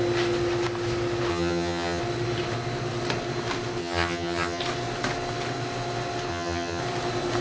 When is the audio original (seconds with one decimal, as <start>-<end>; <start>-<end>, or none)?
0.0-1.3; 2.0-3.8; 4.6-6.3; 6.8-7.4